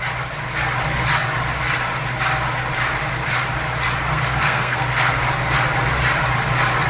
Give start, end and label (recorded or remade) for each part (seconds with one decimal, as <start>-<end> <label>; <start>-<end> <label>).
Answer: 0.0-4.1 recorded; 4.1-5.2 remade; 5.2-6.9 recorded